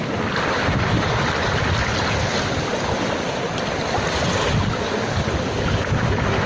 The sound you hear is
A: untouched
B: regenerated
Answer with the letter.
A